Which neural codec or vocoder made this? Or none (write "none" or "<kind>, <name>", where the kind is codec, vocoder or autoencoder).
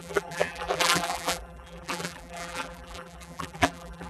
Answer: vocoder, BigVGAN v2